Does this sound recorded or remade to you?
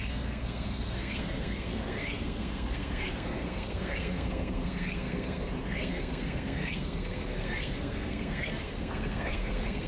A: remade